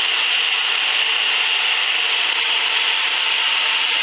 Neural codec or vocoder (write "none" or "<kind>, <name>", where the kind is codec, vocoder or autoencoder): none